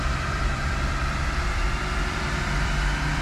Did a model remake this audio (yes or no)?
yes